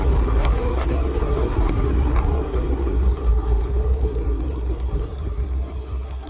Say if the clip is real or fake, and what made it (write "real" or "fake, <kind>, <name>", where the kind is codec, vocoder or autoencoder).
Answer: fake, codec, SNAC